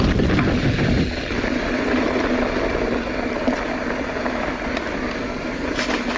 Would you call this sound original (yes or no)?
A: yes